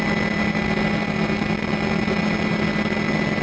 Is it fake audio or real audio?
real